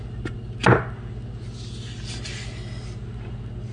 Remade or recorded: recorded